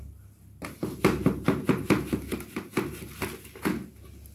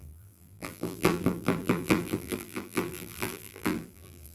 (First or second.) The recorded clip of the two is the first